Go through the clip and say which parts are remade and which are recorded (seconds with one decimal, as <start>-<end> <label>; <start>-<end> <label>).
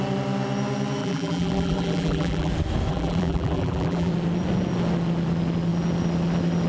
0.0-1.0 recorded; 1.0-2.5 remade; 2.5-2.9 recorded; 2.9-4.1 remade; 4.1-6.7 recorded